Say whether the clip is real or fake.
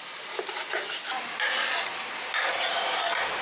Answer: real